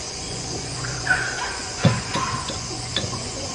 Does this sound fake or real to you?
fake